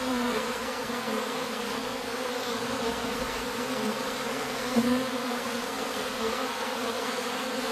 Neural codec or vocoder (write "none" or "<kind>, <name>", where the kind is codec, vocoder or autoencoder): codec, SNAC